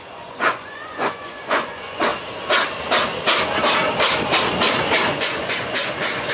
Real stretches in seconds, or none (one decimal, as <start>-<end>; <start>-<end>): 2.1-5.1